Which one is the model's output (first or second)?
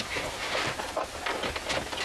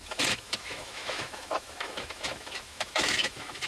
second